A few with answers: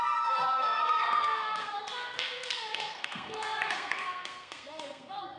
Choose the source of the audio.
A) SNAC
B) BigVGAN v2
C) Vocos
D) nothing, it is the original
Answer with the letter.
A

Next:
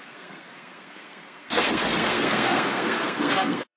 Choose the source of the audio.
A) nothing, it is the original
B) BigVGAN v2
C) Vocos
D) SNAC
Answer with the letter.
D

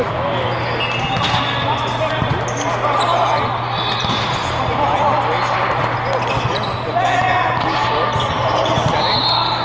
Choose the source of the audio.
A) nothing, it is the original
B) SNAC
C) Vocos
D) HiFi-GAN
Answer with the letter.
A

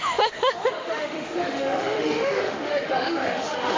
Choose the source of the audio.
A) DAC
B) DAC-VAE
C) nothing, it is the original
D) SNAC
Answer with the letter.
B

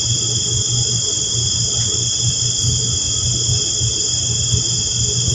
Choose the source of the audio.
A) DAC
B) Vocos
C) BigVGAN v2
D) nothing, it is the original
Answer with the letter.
D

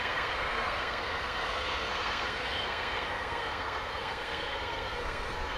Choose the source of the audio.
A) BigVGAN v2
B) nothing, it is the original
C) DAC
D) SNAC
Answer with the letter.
D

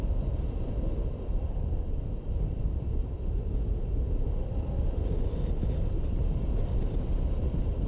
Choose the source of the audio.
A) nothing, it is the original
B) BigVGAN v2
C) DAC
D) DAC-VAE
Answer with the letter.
A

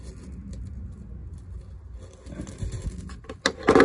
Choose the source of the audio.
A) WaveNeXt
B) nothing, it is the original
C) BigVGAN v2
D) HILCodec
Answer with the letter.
B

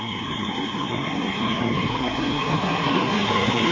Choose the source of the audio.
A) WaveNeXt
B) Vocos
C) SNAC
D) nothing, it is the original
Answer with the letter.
C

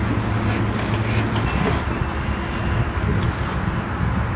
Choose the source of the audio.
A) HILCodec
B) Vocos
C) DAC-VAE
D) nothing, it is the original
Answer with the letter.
D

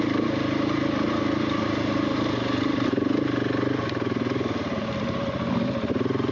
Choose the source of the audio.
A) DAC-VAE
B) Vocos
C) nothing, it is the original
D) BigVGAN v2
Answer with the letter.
C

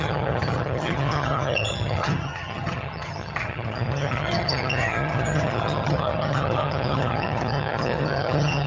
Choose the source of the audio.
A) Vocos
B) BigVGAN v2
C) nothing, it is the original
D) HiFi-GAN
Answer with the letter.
D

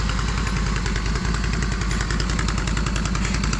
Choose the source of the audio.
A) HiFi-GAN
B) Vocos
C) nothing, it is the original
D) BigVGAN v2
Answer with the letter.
C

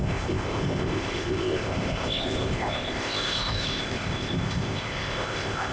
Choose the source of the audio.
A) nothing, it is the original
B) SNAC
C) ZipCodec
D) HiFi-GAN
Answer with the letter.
C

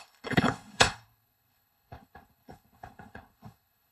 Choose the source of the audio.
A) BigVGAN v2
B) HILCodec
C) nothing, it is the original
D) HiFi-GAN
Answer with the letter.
B